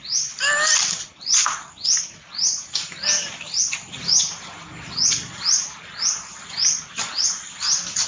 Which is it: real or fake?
real